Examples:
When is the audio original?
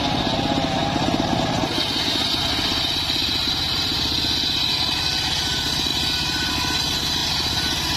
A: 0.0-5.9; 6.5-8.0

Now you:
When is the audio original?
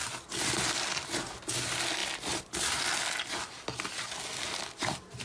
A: 0.8-2.0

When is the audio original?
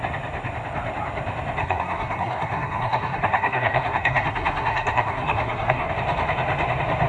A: 0.0-1.6; 5.9-7.1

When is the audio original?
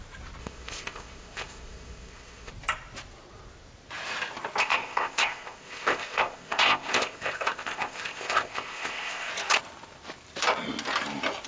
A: 0.0-0.4; 2.5-4.6; 9.3-11.5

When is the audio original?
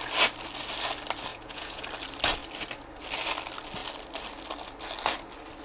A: 0.0-1.3; 1.8-5.6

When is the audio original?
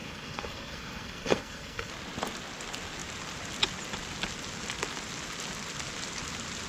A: 1.9-6.7